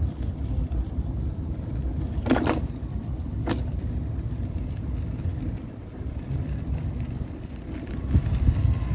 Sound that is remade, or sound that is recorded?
recorded